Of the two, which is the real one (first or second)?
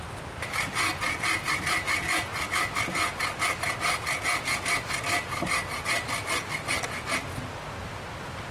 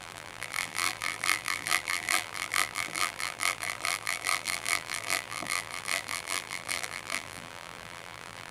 first